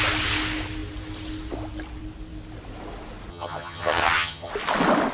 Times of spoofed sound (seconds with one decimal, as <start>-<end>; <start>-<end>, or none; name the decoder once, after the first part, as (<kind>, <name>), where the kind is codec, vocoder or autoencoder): 3.3-4.5 (vocoder, HiFi-GAN)